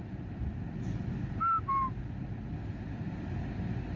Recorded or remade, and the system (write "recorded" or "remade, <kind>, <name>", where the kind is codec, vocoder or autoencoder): recorded